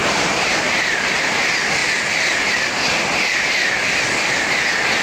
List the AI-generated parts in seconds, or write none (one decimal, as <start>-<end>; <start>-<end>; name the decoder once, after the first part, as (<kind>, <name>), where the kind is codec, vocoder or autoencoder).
0.0-1.4 (vocoder, BigVGAN v2)